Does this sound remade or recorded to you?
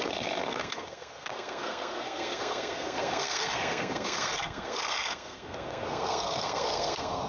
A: remade